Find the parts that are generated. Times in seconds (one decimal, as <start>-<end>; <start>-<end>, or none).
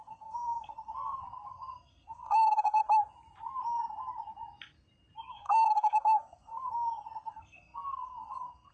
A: 0.0-2.8; 5.3-8.7